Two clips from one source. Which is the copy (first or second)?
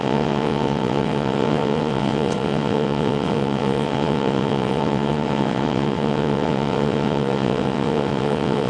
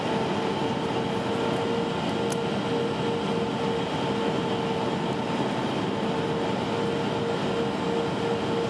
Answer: first